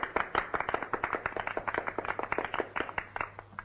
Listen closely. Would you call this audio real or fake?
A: real